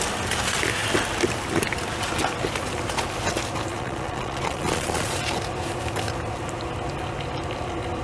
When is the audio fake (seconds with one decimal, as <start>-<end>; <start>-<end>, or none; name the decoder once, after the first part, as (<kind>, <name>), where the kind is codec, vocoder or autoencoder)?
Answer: 3.7-5.2 (vocoder, Vocos)